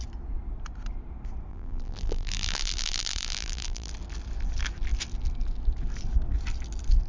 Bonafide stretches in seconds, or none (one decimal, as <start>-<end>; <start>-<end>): 0.0-1.5; 3.9-7.1